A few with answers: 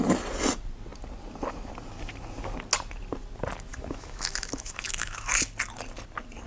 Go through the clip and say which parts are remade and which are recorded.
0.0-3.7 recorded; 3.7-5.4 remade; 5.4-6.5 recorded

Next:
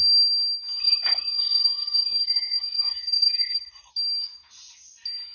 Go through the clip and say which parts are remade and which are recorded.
0.0-0.8 recorded; 0.8-3.9 remade; 3.9-5.3 recorded

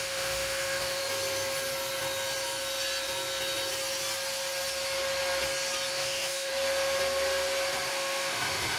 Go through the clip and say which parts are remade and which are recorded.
0.0-1.0 remade; 1.0-5.9 recorded; 5.9-6.5 remade; 6.5-7.9 recorded; 7.9-8.8 remade

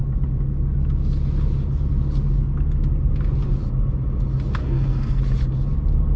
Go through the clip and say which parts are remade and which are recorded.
0.0-4.6 recorded; 4.6-5.2 remade; 5.2-6.2 recorded

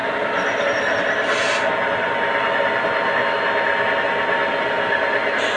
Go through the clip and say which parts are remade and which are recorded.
0.0-5.6 recorded

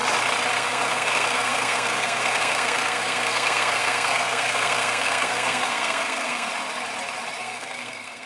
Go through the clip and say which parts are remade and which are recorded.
0.0-0.5 recorded; 0.5-6.5 remade; 6.5-7.4 recorded; 7.4-8.3 remade

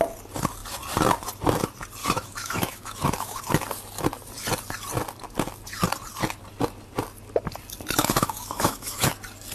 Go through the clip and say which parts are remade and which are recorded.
0.0-2.0 recorded; 2.0-3.4 remade; 3.4-8.0 recorded; 8.0-9.1 remade; 9.1-9.5 recorded